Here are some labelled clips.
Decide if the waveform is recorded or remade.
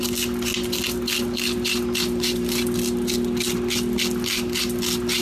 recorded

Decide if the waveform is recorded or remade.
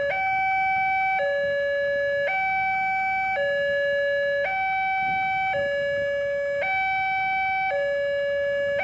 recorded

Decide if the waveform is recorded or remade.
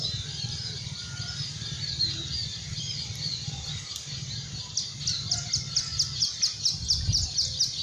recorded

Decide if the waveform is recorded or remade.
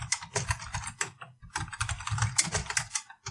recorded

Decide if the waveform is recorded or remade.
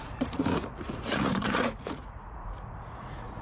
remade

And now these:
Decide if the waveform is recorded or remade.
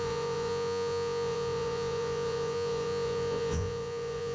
remade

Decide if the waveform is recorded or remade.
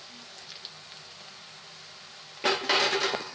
recorded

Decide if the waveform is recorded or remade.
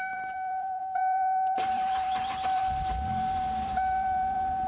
remade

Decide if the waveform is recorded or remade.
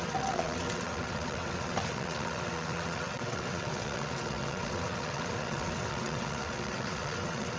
remade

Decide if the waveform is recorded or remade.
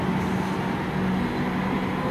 recorded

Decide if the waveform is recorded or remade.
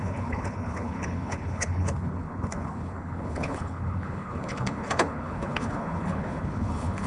remade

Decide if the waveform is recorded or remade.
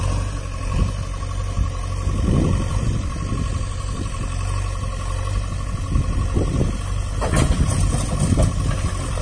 recorded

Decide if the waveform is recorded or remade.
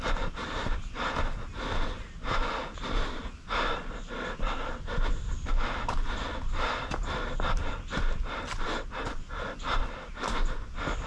recorded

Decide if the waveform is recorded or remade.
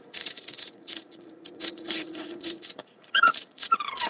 remade